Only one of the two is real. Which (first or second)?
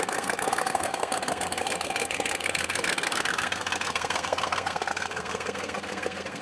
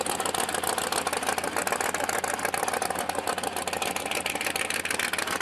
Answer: second